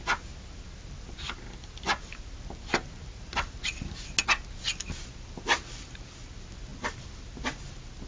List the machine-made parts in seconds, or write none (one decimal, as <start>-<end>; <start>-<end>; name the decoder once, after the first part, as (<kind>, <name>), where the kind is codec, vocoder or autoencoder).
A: none